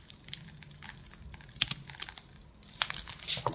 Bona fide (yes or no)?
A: yes